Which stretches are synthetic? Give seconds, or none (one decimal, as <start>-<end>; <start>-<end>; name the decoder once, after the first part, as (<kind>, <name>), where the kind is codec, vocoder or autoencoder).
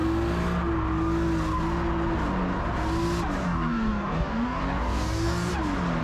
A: 3.4-5.5 (codec, DAC)